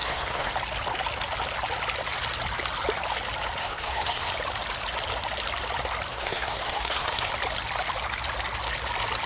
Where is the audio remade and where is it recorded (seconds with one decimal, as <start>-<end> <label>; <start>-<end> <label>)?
0.0-0.5 remade; 0.5-3.6 recorded; 3.6-4.3 remade; 4.3-6.1 recorded; 6.1-7.3 remade; 7.3-9.3 recorded